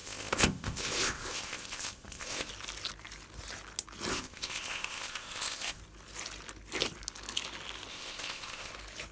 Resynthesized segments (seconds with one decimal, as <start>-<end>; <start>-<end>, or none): 0.0-2.5; 4.1-5.8; 7.9-8.7